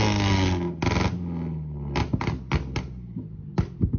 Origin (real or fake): real